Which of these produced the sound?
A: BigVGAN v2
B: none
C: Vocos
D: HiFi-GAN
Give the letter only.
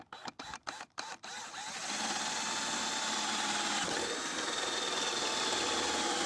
A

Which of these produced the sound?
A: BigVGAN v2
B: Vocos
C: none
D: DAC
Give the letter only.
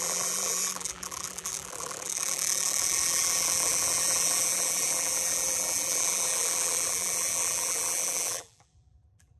A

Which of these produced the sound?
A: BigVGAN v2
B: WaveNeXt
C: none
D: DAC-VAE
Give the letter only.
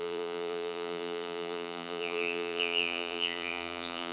A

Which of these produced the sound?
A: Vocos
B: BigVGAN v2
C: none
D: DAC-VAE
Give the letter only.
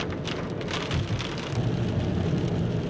C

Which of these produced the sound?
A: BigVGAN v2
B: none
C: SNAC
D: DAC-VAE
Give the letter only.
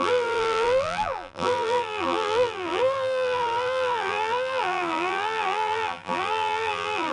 A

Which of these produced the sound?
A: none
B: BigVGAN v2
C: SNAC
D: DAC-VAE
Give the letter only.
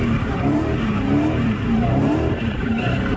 B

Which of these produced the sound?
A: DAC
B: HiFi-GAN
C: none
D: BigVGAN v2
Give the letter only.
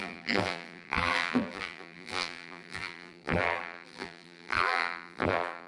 D